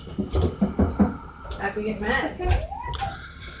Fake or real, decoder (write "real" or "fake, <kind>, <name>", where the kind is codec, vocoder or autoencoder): real